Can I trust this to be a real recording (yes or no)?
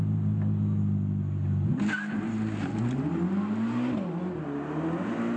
yes